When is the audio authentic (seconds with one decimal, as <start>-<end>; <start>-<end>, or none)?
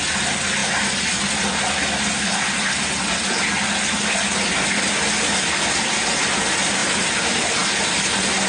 0.0-8.5